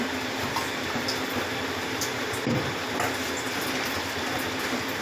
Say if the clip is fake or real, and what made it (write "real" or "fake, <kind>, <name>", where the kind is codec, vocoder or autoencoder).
real